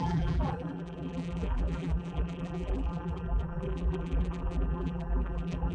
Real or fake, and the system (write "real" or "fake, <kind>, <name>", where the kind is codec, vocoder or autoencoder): fake, vocoder, BigVGAN v2